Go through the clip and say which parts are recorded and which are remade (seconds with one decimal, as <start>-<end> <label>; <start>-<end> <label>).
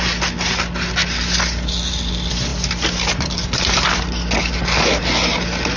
0.0-5.8 recorded